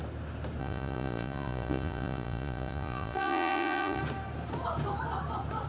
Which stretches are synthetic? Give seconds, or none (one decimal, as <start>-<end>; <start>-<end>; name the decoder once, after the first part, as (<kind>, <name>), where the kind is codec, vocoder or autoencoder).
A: 0.6-4.0 (vocoder, Vocos)